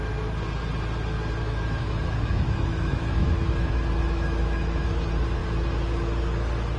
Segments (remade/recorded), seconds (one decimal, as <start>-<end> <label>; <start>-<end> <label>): 0.0-1.4 recorded; 1.4-5.0 remade; 5.0-6.8 recorded